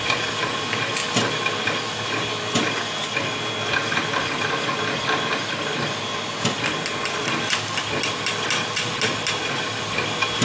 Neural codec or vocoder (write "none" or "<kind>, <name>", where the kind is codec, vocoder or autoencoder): none